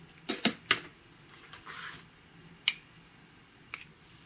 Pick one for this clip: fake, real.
real